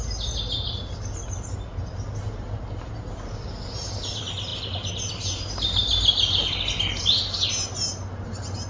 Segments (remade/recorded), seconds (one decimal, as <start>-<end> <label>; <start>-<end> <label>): 0.0-8.7 recorded

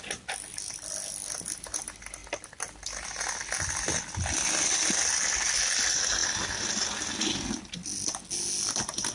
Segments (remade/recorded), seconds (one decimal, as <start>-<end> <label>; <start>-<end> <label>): 0.0-9.1 recorded

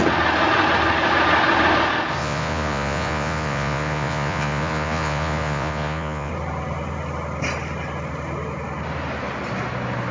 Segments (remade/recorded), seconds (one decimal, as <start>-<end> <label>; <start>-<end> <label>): 0.0-2.2 recorded; 2.2-6.3 remade; 6.3-10.1 recorded

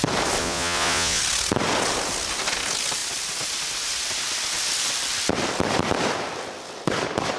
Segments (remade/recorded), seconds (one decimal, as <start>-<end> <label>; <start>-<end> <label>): 0.0-0.4 recorded; 0.4-1.2 remade; 1.2-7.4 recorded